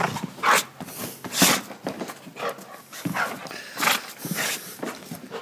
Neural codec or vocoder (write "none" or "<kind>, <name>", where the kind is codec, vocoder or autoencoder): none